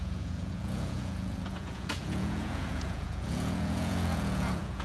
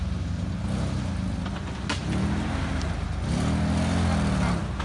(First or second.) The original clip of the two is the second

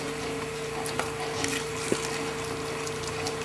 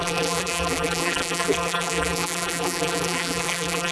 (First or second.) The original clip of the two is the first